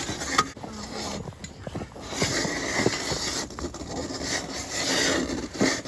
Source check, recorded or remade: recorded